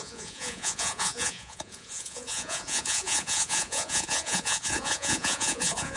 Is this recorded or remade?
remade